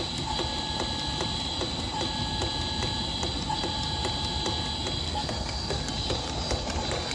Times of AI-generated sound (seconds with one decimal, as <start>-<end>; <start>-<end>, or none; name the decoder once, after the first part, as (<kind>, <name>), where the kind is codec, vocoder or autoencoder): 5.0-5.8 (codec, SNAC)